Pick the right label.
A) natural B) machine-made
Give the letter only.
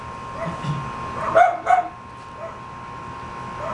A